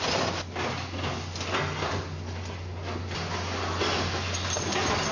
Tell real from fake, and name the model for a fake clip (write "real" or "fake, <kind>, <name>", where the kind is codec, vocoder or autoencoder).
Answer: real